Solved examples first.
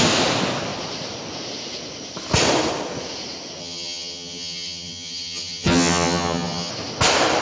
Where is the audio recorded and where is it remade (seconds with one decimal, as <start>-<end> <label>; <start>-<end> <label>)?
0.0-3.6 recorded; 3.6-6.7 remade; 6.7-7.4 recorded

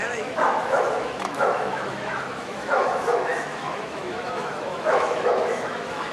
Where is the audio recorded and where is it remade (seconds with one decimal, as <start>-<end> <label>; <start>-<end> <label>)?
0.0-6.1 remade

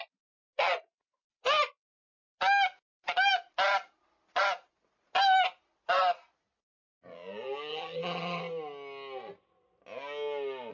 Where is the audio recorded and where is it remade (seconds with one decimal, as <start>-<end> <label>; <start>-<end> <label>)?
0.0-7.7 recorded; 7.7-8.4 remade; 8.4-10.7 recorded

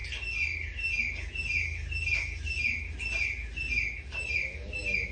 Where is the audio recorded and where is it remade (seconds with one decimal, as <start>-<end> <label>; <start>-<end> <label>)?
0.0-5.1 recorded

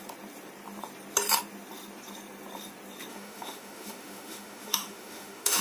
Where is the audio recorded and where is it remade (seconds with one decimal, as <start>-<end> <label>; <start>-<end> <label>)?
0.0-3.1 recorded; 3.1-5.6 remade